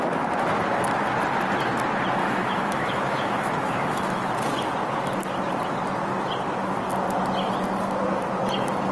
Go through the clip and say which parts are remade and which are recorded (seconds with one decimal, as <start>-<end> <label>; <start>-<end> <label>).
0.0-2.2 recorded; 2.2-4.3 remade; 4.3-8.9 recorded